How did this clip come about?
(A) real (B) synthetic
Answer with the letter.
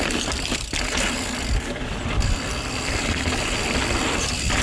A